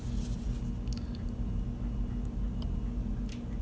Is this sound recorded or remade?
recorded